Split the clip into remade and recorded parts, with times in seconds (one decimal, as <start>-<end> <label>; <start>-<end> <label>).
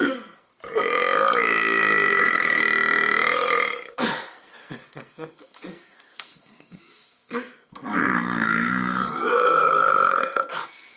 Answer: 0.0-0.5 remade; 0.5-2.2 recorded; 2.2-2.6 remade; 2.6-3.9 recorded; 3.9-11.0 remade